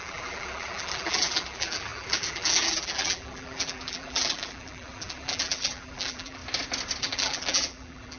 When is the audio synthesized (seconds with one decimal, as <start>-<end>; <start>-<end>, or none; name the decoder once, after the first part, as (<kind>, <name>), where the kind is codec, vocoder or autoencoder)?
0.0-6.4 (vocoder, BigVGAN v2); 7.0-8.2